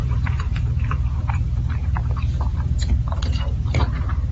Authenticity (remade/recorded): remade